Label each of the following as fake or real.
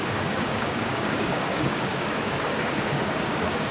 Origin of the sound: fake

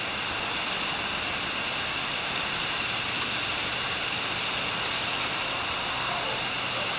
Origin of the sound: real